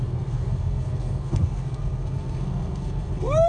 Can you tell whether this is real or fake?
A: fake